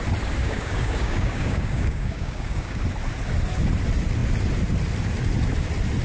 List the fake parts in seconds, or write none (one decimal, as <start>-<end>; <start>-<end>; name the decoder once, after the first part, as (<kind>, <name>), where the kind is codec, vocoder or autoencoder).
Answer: 0.4-2.8 (codec, DAC)